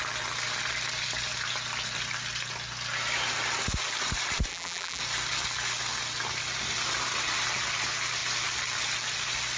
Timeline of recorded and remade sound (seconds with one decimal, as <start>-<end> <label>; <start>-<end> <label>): 0.0-4.5 recorded; 4.5-5.0 remade; 5.0-9.6 recorded